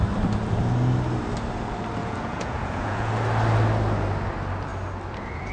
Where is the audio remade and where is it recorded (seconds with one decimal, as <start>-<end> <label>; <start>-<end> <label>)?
0.0-2.0 recorded; 2.0-3.1 remade; 3.1-5.5 recorded